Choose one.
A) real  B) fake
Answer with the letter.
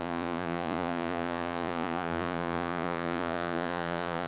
B